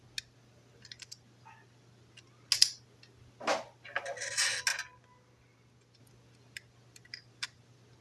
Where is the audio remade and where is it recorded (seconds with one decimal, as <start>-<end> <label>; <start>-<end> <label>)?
0.0-8.0 recorded